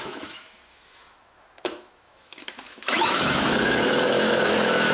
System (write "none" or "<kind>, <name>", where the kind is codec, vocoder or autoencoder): autoencoder, DAC-VAE